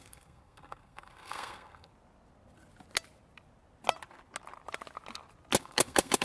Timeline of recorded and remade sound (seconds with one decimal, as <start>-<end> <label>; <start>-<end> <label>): 0.0-1.9 remade; 1.9-5.6 recorded; 5.6-6.2 remade